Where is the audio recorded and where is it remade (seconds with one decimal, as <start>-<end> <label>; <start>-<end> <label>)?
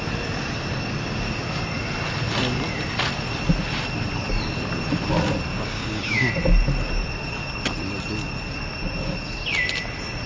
0.0-5.5 recorded; 5.5-6.3 remade; 6.3-10.3 recorded